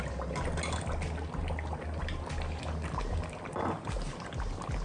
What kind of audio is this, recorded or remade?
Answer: recorded